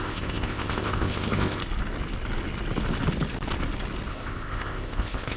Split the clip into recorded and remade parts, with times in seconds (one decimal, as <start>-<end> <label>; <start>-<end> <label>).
0.0-1.6 remade; 1.6-4.1 recorded; 4.1-5.4 remade